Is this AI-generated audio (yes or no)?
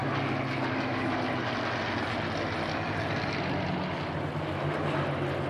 no